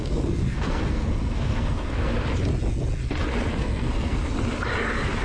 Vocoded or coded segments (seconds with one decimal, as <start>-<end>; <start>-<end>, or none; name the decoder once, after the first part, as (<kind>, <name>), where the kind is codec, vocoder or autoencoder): 0.0-2.1 (codec, SNAC); 3.6-4.2